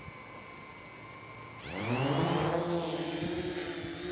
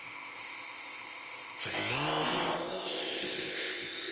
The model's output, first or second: second